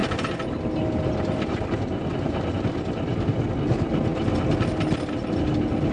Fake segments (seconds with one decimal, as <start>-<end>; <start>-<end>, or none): none